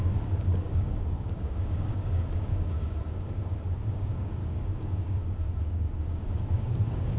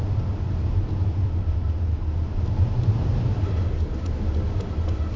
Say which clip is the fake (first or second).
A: first